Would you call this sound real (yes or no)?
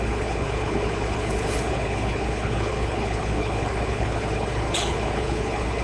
no